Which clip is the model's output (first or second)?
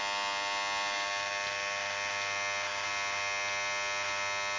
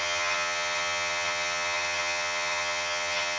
second